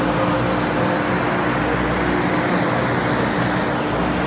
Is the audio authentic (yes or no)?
yes